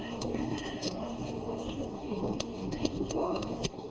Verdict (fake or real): fake